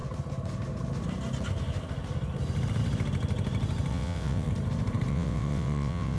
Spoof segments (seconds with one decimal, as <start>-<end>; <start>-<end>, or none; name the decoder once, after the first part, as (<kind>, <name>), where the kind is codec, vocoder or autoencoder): 3.9-4.5 (vocoder, WaveNeXt); 5.1-6.2